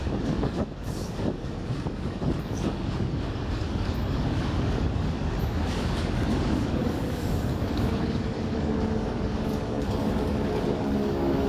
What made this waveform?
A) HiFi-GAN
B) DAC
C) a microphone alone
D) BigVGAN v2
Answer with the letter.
B